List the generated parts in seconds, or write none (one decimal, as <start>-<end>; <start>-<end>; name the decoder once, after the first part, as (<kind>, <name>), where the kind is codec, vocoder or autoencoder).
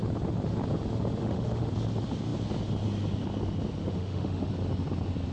1.2-1.7 (autoencoder, DAC-VAE); 3.8-4.5